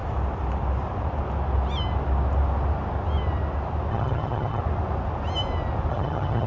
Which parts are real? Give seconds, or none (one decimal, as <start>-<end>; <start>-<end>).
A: 0.0-3.9; 4.6-5.9